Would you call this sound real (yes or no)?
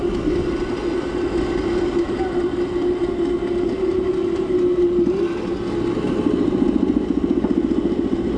yes